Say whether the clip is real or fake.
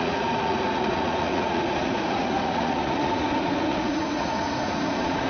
fake